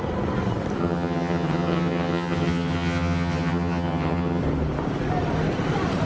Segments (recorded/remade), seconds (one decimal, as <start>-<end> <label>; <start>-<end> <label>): 0.0-0.8 recorded; 0.8-4.4 remade; 4.4-6.1 recorded